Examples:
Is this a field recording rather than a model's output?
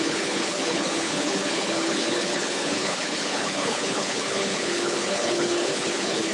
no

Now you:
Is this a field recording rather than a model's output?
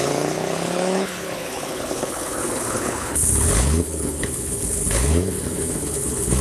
no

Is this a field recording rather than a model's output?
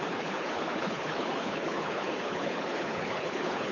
no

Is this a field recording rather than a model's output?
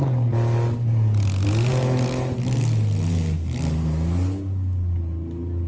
yes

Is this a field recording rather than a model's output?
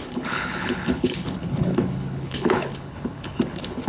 no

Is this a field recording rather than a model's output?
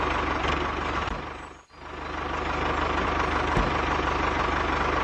yes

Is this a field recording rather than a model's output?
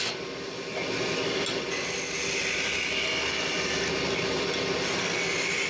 yes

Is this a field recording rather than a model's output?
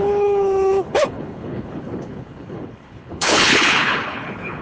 no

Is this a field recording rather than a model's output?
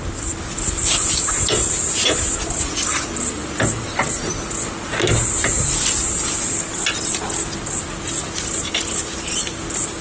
yes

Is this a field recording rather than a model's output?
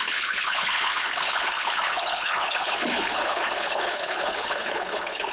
no